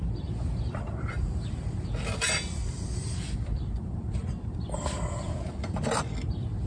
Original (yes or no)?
no